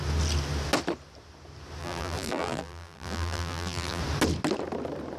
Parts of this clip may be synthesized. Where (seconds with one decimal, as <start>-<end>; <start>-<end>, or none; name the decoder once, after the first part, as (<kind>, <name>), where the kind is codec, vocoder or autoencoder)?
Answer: 1.8-4.0 (vocoder, BigVGAN v2)